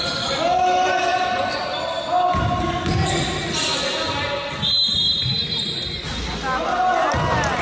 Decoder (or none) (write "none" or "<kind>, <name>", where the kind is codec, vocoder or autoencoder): none